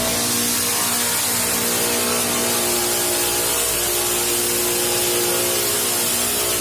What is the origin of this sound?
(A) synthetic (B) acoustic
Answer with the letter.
B